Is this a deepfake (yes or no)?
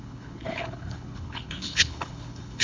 yes